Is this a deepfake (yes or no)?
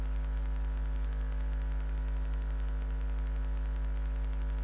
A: no